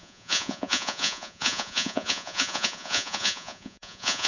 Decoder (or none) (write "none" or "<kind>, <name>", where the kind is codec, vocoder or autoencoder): vocoder, Vocos